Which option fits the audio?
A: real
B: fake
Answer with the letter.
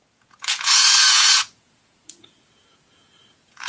B